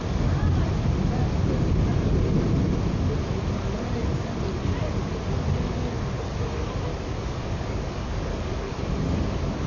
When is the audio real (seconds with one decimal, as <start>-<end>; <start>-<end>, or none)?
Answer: 0.0-6.9; 8.7-9.7